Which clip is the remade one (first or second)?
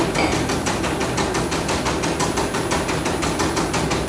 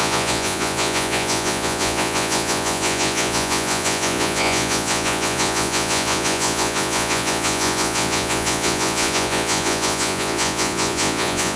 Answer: second